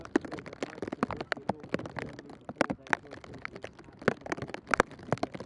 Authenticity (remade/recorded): recorded